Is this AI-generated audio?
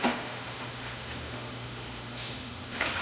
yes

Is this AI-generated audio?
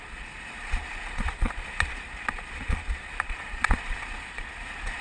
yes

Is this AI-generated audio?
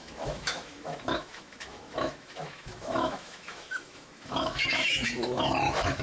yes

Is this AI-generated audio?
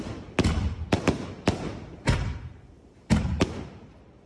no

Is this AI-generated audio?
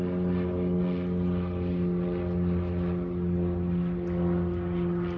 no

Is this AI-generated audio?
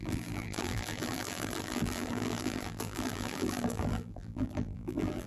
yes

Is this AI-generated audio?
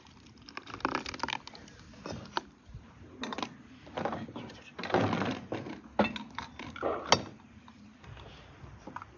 no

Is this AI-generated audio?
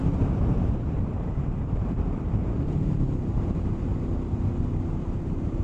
yes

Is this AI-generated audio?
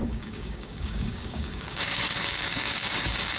yes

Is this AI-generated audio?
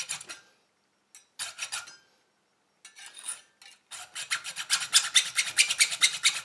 no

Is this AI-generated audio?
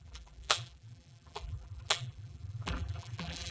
yes